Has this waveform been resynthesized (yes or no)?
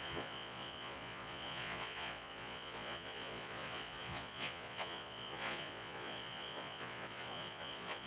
yes